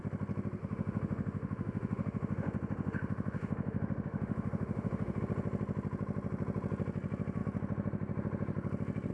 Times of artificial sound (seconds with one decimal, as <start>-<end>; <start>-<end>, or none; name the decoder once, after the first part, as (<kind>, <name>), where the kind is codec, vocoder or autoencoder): 0.6-5.2 (autoencoder, DAC-VAE)